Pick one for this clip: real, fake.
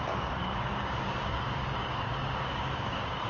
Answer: fake